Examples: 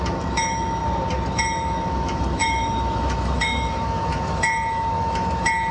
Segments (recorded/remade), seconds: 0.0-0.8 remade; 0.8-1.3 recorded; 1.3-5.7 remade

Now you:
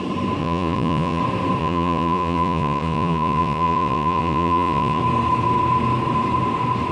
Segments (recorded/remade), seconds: 0.0-0.4 recorded; 0.4-1.2 remade; 1.2-1.6 recorded; 1.6-5.0 remade; 5.0-6.9 recorded

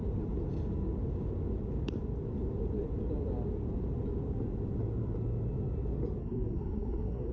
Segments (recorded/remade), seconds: 0.0-6.2 recorded; 6.2-7.3 remade

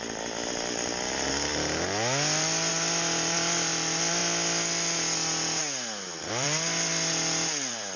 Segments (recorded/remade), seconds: 0.0-1.5 remade; 1.5-2.7 recorded; 2.7-4.2 remade; 4.2-6.3 recorded; 6.3-8.0 remade

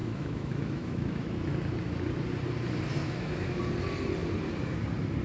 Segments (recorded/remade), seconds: 0.0-1.3 remade; 1.3-3.0 recorded; 3.0-3.6 remade; 3.6-5.2 recorded

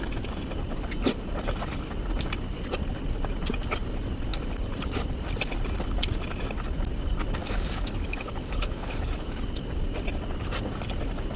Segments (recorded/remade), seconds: 0.0-7.4 recorded; 7.4-9.5 remade; 9.5-11.4 recorded

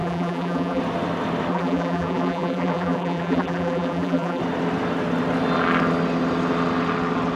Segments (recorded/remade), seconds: 0.0-0.8 remade; 0.8-1.5 recorded; 1.5-4.4 remade; 4.4-7.4 recorded